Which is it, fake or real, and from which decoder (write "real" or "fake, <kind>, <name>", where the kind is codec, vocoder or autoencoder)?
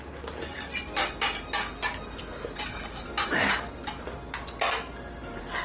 real